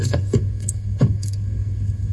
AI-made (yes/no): yes